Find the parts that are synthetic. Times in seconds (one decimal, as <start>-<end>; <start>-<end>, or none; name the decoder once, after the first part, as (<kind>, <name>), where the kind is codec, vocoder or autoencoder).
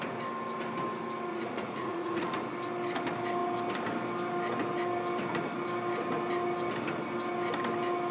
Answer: 1.3-2.4 (vocoder, Vocos)